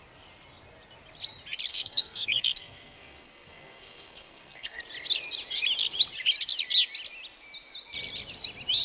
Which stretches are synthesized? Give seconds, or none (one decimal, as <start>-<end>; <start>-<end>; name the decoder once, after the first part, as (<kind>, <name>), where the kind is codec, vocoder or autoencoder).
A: 1.7-4.8 (codec, SNAC)